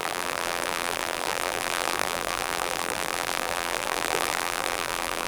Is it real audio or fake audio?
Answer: fake